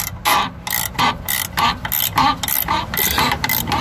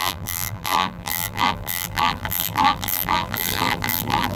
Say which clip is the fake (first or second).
second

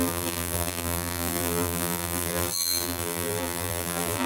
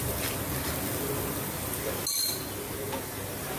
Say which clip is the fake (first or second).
first